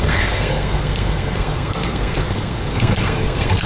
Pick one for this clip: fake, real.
fake